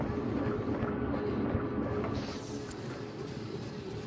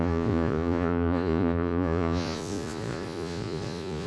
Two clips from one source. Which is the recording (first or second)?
first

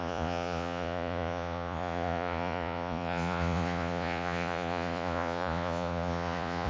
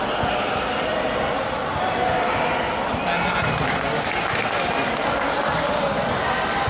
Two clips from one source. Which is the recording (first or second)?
second